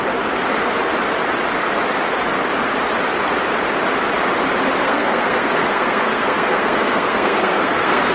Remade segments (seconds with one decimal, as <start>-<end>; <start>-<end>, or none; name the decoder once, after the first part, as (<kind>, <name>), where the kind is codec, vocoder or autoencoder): 4.8-8.1 (codec, SNAC)